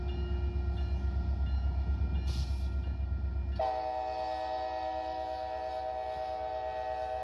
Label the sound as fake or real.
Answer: real